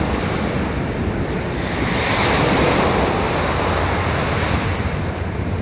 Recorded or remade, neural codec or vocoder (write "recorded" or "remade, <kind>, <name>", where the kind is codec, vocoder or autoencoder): recorded